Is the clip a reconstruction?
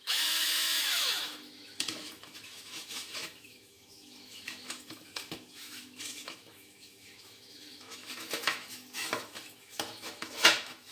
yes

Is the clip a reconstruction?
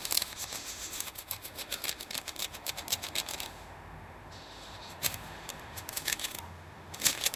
yes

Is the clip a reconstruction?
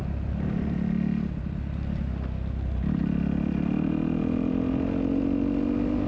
no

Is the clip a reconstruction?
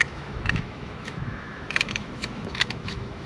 yes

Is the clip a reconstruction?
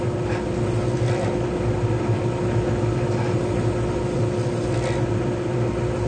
no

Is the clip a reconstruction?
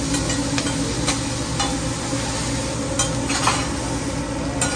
no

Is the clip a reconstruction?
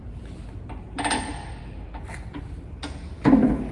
no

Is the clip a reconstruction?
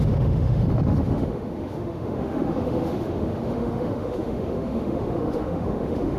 yes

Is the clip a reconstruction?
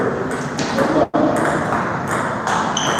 no